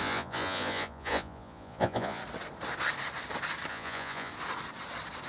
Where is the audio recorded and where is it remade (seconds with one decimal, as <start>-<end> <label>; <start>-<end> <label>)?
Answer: 0.0-2.2 remade; 2.2-3.7 recorded; 3.7-4.3 remade; 4.3-5.3 recorded